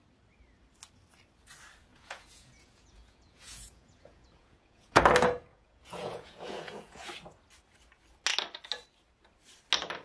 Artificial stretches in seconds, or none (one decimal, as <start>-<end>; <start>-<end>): 1.9-5.0; 5.5-7.1